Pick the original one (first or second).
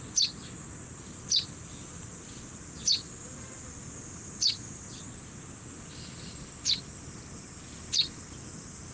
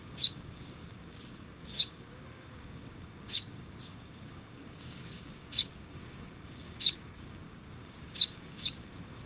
first